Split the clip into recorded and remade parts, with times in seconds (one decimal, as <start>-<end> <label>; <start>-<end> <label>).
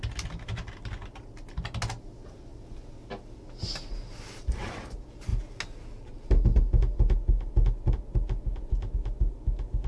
0.0-9.9 recorded